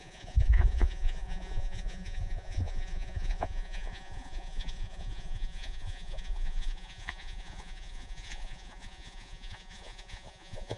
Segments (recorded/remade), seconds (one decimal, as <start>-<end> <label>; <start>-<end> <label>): 0.0-10.8 remade